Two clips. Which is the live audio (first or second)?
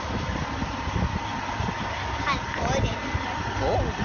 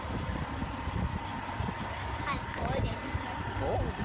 first